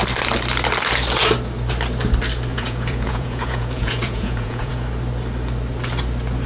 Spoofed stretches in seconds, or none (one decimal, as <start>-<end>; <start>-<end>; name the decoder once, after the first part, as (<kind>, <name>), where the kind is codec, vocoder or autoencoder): 2.5-4.7 (vocoder, Vocos)